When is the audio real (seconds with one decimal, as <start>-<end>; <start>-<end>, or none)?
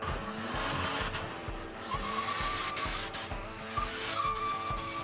0.0-3.9; 4.4-5.0